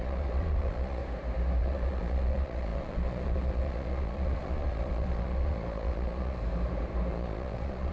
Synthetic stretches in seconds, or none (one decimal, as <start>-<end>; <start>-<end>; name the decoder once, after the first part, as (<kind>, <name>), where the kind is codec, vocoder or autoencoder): 0.0-1.0 (vocoder, Vocos); 1.6-6.4; 7.1-7.9